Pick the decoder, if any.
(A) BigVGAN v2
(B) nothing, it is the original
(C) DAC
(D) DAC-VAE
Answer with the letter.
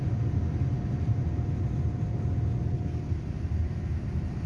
B